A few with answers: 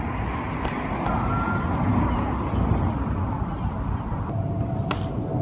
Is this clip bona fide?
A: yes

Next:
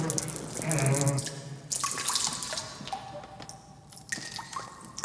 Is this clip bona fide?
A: yes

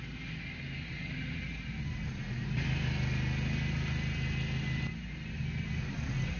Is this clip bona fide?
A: yes